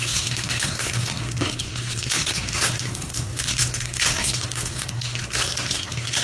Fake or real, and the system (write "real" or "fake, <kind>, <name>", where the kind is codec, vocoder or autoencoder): fake, codec, SNAC